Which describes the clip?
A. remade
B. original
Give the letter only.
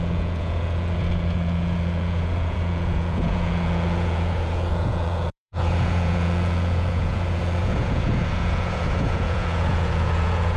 A